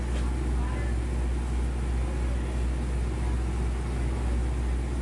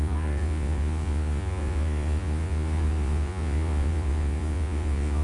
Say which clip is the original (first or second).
first